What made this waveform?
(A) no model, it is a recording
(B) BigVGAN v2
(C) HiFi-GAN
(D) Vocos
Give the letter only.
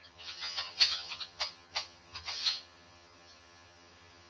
C